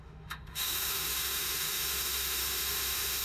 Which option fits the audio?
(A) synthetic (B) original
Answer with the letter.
A